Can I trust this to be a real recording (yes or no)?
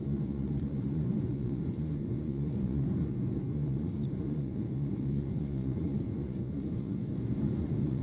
no